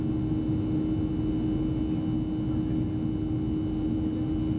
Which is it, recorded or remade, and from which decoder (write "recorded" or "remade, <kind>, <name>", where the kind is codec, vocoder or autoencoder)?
recorded